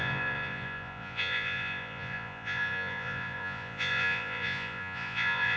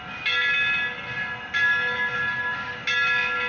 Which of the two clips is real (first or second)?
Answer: second